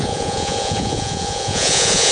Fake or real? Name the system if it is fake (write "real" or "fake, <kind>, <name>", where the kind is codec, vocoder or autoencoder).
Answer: fake, vocoder, Vocos